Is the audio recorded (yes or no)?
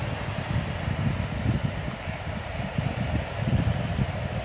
yes